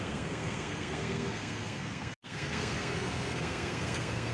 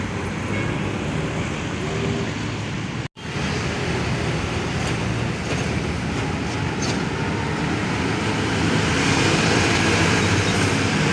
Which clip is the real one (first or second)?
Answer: second